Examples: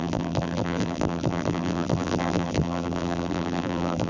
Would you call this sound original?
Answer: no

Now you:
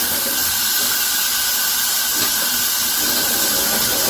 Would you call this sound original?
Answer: yes